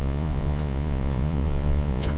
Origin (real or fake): fake